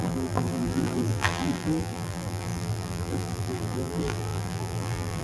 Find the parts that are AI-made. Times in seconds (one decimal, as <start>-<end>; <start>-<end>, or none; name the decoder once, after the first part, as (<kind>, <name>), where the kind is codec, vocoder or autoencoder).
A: 0.0-5.2 (vocoder, BigVGAN v2)